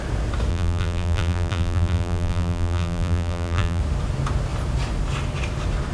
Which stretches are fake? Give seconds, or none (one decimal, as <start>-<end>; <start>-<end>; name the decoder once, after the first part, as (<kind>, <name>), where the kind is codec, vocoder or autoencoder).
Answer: 0.5-3.8 (vocoder, BigVGAN v2)